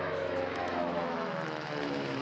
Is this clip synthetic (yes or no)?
yes